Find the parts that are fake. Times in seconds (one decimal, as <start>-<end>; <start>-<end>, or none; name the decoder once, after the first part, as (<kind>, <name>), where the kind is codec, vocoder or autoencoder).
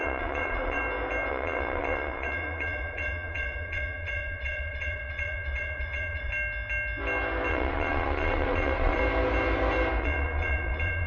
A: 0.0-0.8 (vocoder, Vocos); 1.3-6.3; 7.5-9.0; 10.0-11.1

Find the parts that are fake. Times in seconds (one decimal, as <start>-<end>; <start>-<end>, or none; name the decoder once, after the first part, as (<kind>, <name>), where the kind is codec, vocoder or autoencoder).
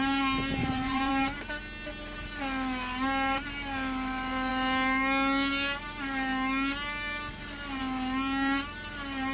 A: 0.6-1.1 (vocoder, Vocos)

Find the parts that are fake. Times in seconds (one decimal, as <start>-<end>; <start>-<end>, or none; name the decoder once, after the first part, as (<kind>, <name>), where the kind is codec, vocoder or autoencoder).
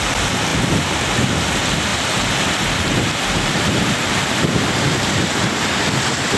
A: 0.5-1.4 (vocoder, BigVGAN v2); 3.3-5.7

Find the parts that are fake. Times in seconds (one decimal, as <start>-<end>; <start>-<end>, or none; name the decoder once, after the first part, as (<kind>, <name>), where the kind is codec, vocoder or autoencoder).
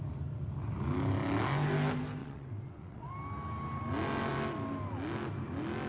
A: 2.2-3.1 (vocoder, WaveNeXt)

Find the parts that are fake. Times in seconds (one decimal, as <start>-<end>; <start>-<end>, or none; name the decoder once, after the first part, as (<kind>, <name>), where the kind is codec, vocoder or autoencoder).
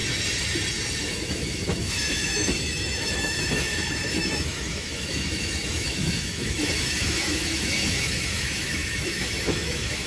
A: 1.0-10.1 (autoencoder, DAC-VAE)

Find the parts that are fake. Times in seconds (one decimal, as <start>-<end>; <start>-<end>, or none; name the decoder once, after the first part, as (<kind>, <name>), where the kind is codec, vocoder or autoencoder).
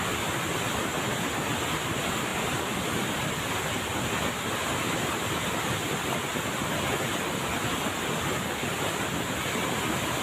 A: none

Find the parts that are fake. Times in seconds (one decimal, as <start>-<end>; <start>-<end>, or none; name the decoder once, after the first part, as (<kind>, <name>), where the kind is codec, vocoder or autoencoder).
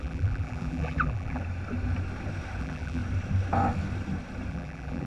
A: 0.0-1.4 (vocoder, BigVGAN v2); 2.6-3.0; 4.5-5.1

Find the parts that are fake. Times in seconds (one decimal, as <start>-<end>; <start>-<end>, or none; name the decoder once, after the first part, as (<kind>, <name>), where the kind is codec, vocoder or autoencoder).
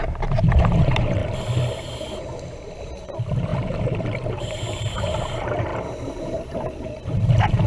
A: 0.0-1.2 (vocoder, BigVGAN v2); 2.8-7.7